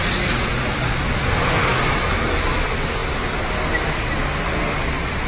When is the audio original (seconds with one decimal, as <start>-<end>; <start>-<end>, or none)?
0.0-1.7; 2.4-5.3